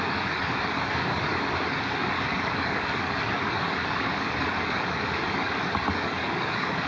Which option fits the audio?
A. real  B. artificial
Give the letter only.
B